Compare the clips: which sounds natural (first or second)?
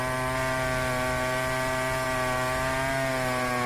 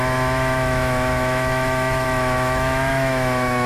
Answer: first